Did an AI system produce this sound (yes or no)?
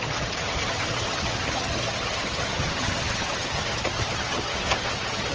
yes